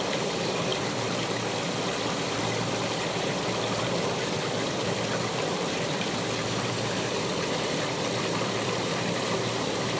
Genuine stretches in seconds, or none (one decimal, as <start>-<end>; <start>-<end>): 0.7-3.8